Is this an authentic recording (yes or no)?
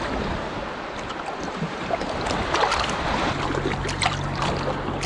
yes